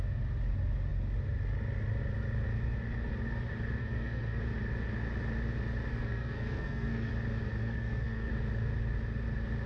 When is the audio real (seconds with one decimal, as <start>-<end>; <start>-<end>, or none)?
0.0-3.8; 4.4-5.9; 7.1-7.6; 8.3-9.7